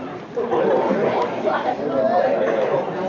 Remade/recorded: recorded